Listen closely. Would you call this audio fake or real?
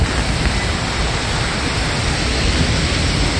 real